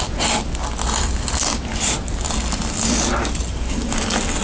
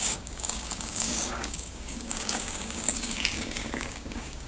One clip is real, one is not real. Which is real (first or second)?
first